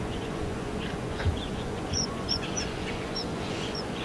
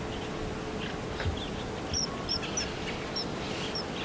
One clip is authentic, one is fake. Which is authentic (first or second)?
second